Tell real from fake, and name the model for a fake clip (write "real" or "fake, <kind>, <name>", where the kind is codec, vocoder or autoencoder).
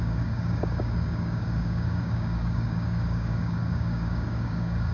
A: fake, codec, DAC